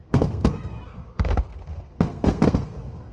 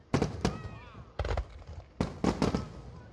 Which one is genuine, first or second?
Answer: second